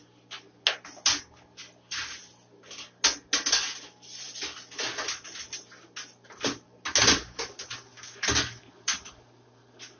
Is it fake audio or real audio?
real